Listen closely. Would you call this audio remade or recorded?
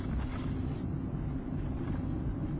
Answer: recorded